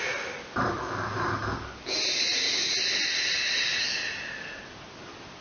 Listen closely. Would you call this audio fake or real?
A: real